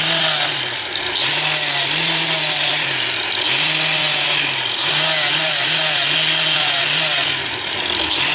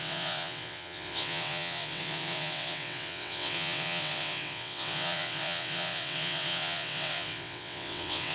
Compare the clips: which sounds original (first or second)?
first